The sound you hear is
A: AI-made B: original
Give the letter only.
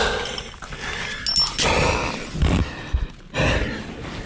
B